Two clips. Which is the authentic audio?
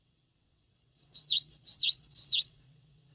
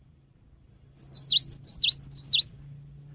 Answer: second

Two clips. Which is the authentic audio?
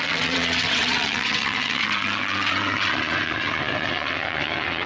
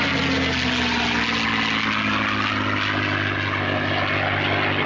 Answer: second